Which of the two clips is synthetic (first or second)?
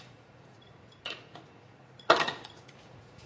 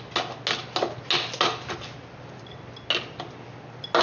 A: first